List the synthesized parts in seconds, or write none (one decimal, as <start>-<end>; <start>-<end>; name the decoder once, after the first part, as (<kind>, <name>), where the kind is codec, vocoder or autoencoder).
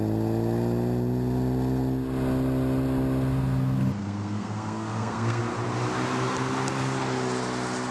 4.0-5.4 (codec, SNAC)